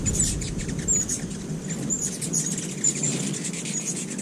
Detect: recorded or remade remade